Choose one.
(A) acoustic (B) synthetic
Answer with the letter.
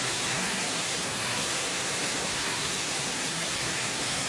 B